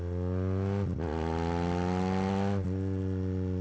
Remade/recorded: recorded